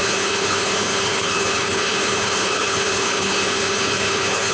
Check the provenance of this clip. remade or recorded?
remade